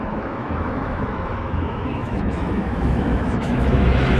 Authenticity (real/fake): fake